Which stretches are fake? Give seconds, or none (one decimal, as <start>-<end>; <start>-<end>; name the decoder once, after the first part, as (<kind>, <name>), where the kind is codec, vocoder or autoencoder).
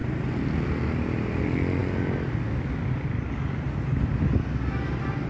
none